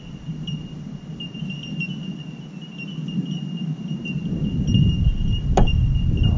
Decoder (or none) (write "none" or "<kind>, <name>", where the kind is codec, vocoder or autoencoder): none